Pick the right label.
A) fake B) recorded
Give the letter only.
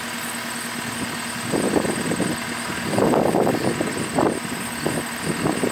B